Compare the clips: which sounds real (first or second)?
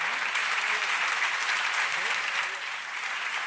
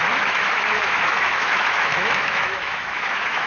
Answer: first